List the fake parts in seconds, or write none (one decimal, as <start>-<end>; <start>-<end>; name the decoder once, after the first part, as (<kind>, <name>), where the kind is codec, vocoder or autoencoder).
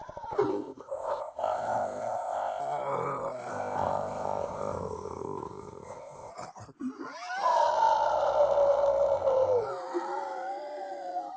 0.5-2.6 (codec, ZipCodec); 3.5-6.3